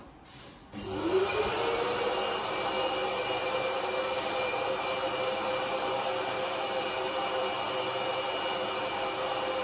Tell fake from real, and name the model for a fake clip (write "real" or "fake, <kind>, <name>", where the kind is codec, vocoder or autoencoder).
real